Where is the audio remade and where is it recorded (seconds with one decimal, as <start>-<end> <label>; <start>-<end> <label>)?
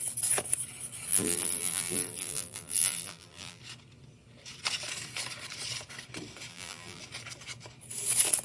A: 0.0-1.1 recorded; 1.1-3.6 remade; 3.6-6.5 recorded; 6.5-7.0 remade; 7.0-8.4 recorded